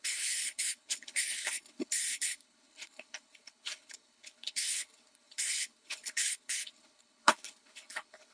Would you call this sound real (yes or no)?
no